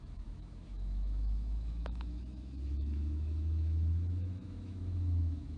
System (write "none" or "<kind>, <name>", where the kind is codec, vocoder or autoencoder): autoencoder, DAC-VAE